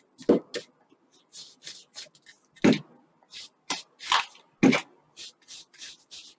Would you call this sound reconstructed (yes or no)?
no